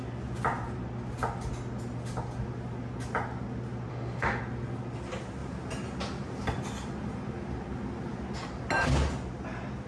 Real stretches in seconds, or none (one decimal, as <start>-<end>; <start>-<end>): 0.0-3.9; 4.4-9.9

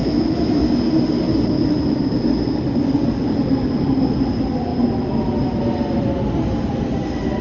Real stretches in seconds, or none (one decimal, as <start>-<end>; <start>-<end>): 0.6-7.4

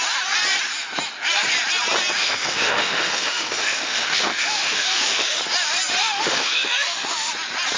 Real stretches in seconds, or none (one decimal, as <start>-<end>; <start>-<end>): 0.0-2.2; 5.4-6.0; 7.3-7.8

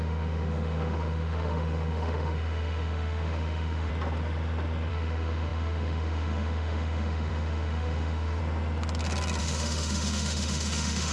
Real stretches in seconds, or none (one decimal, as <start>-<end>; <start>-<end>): 3.9-4.9; 8.4-9.4

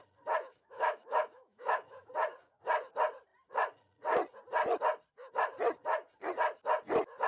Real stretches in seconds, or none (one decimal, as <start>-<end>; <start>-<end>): 0.0-0.5; 2.1-7.3

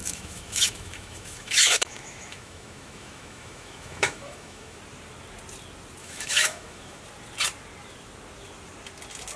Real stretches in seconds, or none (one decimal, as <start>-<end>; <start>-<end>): 4.8-6.0; 7.0-9.4

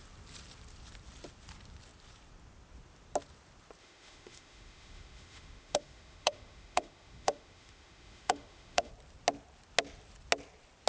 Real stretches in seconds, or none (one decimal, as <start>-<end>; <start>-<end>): 0.0-3.8; 8.9-10.9

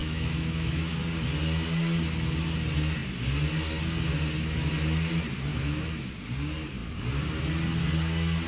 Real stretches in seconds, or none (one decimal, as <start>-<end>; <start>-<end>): 1.0-5.5; 6.1-8.5